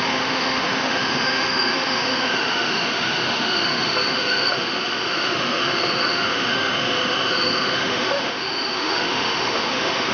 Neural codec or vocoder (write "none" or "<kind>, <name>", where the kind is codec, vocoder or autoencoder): autoencoder, DAC-VAE